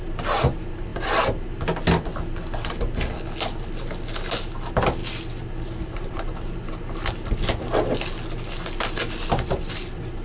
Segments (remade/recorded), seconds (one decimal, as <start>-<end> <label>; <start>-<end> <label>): 0.0-10.2 recorded